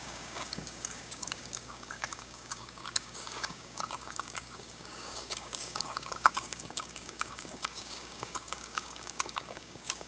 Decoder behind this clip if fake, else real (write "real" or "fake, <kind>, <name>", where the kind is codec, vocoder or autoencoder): fake, codec, DAC